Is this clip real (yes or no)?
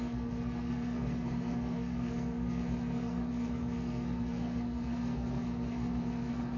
no